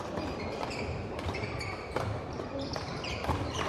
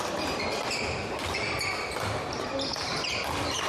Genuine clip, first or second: second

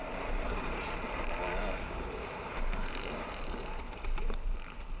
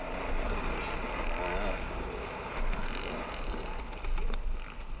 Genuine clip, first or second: second